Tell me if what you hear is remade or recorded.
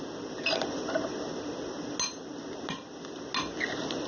recorded